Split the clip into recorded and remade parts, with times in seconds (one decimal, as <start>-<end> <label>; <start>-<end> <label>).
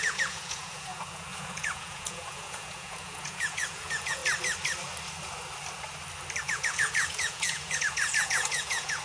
0.0-4.2 remade; 4.2-6.4 recorded; 6.4-9.0 remade